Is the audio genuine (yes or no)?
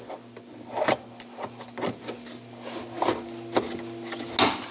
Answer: yes